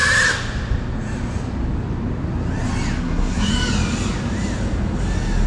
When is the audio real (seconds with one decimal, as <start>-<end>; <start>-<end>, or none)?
0.0-3.0; 3.5-5.5